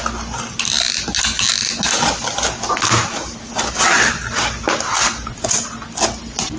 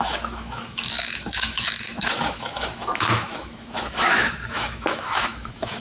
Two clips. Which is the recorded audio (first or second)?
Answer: first